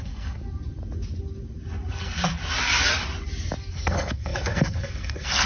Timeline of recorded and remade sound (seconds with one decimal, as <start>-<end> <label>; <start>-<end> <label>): 0.0-0.4 remade; 0.4-1.9 recorded; 1.9-2.4 remade; 2.4-3.7 recorded; 3.7-5.5 remade